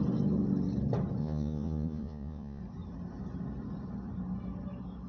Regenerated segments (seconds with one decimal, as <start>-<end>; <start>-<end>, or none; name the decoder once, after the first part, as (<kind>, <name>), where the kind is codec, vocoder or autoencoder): 1.2-2.6 (vocoder, Vocos)